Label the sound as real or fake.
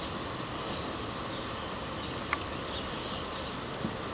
real